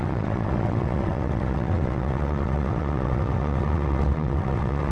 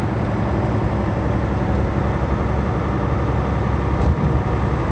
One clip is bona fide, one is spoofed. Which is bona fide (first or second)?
second